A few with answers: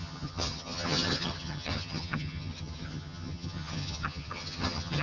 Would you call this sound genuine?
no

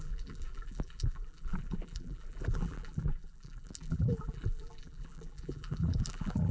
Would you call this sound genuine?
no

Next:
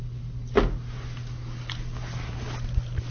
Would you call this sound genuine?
yes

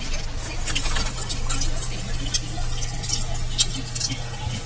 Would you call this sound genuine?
yes